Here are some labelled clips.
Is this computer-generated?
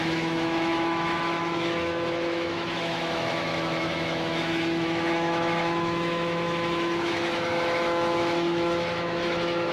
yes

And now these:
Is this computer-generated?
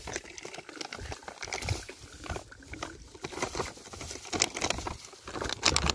no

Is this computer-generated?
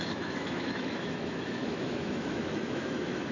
yes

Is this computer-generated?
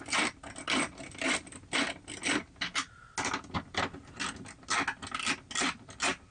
no